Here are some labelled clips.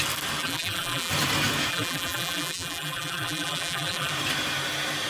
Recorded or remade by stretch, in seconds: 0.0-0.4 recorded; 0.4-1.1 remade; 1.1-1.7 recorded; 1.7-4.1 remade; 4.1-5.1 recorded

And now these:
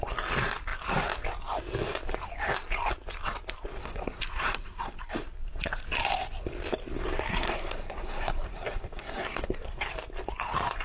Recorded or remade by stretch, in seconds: 0.0-3.8 recorded; 3.8-5.0 remade; 5.0-7.3 recorded; 7.3-9.8 remade; 9.8-10.8 recorded

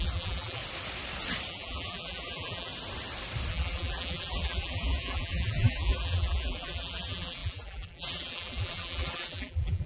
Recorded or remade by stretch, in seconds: 0.0-0.6 remade; 0.6-1.5 recorded; 1.5-2.7 remade; 2.7-3.5 recorded; 3.5-9.9 remade

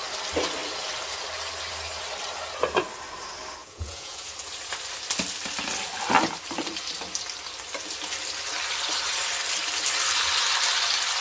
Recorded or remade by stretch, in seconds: 0.0-3.6 recorded; 3.6-4.3 remade; 4.3-11.2 recorded

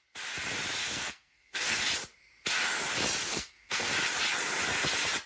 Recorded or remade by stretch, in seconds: 0.0-0.8 recorded; 0.8-1.8 remade; 1.8-3.2 recorded; 3.2-3.9 remade; 3.9-5.3 recorded

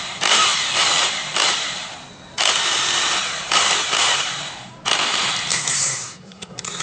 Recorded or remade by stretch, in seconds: 0.0-5.5 recorded; 5.5-6.8 remade